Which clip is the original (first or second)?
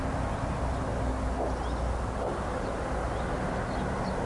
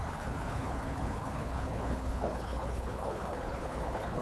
first